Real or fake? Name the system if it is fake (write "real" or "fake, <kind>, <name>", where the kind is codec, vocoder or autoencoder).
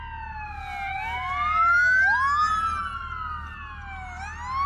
real